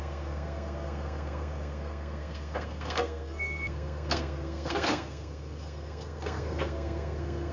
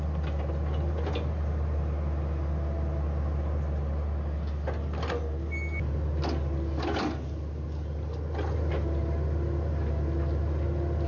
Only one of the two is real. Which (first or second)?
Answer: second